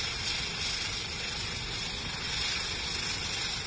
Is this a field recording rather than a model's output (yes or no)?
yes